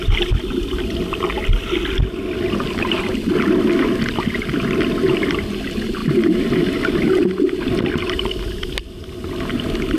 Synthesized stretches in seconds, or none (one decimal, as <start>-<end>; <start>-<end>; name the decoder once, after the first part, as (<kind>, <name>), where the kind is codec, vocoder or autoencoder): none